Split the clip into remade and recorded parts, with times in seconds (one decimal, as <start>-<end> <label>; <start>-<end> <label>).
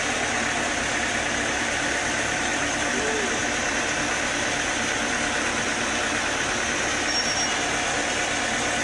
0.0-8.8 recorded